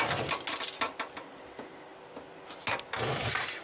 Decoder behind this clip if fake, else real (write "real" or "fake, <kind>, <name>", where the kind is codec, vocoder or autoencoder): real